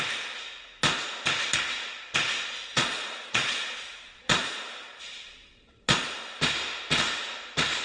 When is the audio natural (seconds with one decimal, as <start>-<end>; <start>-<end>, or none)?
0.0-2.7; 6.4-7.8